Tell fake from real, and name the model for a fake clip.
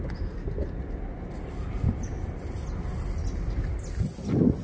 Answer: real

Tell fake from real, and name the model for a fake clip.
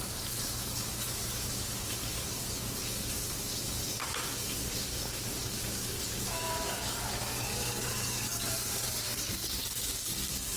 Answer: fake, codec, DAC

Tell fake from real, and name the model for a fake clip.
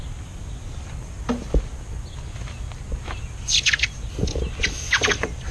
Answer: real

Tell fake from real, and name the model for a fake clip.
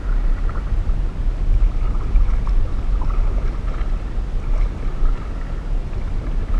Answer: real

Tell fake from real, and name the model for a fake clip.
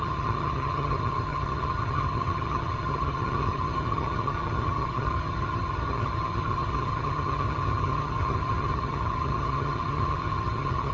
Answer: fake, vocoder, HiFi-GAN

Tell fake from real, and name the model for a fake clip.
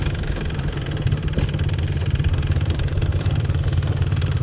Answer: fake, vocoder, BigVGAN v2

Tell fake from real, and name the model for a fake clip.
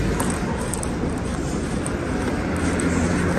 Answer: real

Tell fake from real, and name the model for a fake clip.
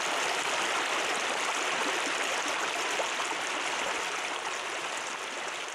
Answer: real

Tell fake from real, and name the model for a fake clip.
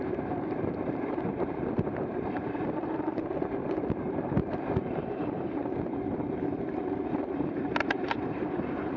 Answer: fake, vocoder, BigVGAN v2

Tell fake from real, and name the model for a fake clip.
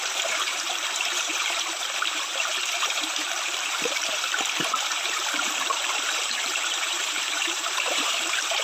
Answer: fake, vocoder, BigVGAN v2